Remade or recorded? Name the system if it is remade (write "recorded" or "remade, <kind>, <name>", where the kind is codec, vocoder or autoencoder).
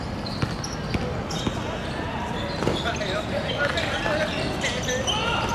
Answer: recorded